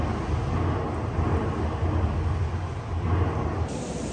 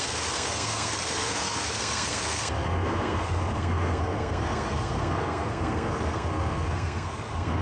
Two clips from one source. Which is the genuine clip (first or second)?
first